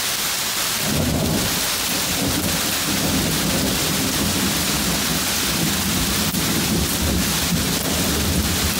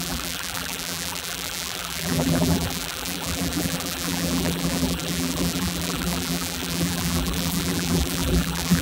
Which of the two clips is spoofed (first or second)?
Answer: second